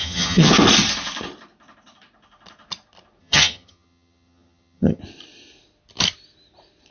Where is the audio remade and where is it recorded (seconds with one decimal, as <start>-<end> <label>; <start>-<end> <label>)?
0.0-0.5 remade; 0.5-3.2 recorded; 3.2-5.0 remade; 5.0-6.9 recorded